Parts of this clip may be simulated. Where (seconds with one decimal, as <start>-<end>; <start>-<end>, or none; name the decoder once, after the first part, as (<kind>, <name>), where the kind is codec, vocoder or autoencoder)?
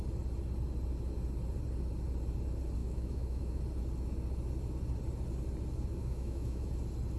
2.8-3.6 (autoencoder, DAC-VAE); 6.0-6.7